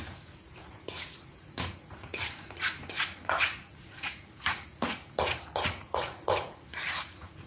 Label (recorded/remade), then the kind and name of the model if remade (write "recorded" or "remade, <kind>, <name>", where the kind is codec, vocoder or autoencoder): remade, vocoder, Vocos